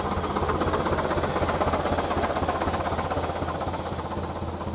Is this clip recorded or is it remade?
recorded